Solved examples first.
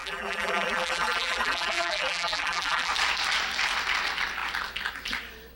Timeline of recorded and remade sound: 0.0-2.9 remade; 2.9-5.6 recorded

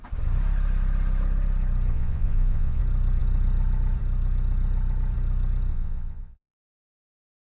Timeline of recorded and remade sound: 0.0-1.9 recorded; 1.9-2.8 remade; 2.8-5.7 recorded; 5.7-7.0 remade; 7.0-7.5 recorded

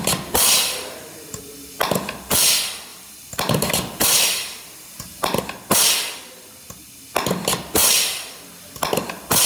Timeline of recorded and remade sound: 0.0-2.9 recorded; 2.9-5.4 remade; 5.4-9.5 recorded

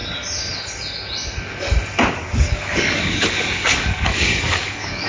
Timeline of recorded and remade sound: 0.0-2.1 recorded; 2.1-5.1 remade